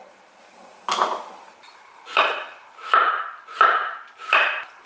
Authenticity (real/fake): real